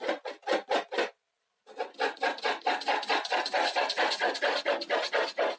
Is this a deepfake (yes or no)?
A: no